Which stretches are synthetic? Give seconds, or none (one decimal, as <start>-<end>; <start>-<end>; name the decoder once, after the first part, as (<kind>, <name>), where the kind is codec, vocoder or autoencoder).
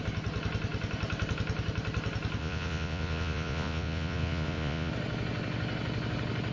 2.4-4.9 (vocoder, Vocos)